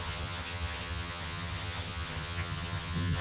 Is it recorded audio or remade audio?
remade